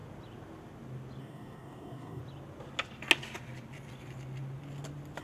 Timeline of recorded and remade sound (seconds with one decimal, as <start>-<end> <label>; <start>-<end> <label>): 0.0-1.2 recorded; 1.2-2.2 remade; 2.2-5.2 recorded